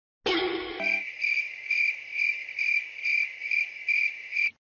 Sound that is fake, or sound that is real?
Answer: real